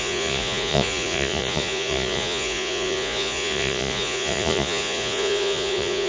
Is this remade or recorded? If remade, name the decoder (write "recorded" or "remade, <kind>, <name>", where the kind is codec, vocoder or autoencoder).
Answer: remade, vocoder, Vocos